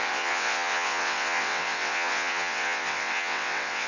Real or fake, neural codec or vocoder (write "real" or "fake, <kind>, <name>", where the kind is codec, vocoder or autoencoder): fake, vocoder, WaveNeXt